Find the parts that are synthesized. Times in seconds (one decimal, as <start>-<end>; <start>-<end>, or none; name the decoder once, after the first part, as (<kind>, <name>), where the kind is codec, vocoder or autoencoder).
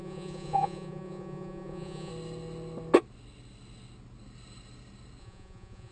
0.0-2.1 (vocoder, Vocos); 5.2-5.9